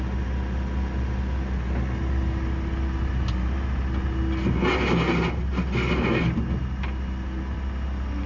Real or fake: real